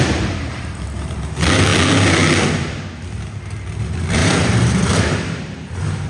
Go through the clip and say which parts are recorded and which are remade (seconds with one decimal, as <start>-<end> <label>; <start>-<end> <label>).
0.0-1.7 remade; 1.7-3.8 recorded; 3.8-6.1 remade